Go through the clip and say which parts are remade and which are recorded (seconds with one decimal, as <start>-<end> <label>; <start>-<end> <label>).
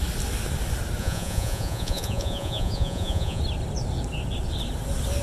0.0-1.0 recorded; 1.0-3.4 remade; 3.4-5.2 recorded